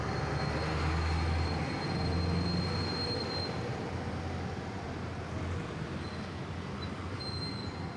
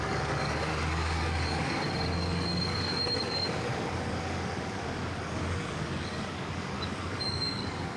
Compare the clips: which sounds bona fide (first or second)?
first